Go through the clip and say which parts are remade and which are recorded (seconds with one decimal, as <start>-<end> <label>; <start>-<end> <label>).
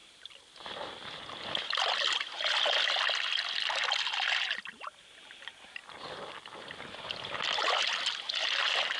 0.0-4.7 recorded; 4.7-5.8 remade; 5.8-8.6 recorded; 8.6-9.0 remade